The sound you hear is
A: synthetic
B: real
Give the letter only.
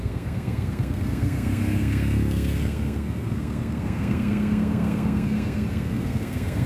A